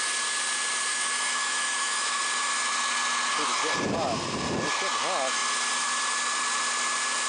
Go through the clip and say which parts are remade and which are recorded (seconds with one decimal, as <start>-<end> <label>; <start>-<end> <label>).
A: 0.0-0.9 recorded; 0.9-2.2 remade; 2.2-7.3 recorded